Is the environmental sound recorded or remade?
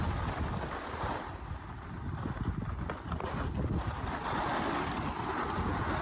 recorded